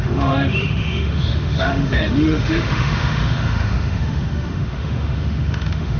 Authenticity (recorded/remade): remade